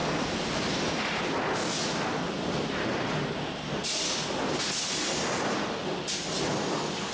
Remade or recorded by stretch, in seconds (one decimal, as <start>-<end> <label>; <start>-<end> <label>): 0.0-7.1 recorded